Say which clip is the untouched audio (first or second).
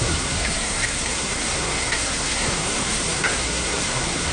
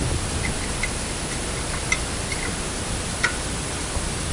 second